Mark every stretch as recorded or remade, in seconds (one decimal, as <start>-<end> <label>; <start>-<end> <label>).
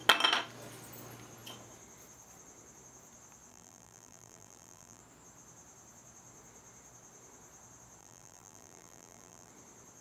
0.0-3.5 recorded; 3.5-5.0 remade; 5.0-8.0 recorded; 8.0-9.5 remade; 9.5-10.0 recorded